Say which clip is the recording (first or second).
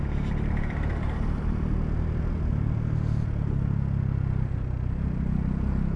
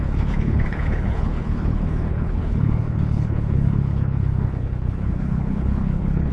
first